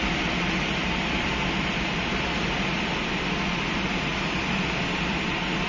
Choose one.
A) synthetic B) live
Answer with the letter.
B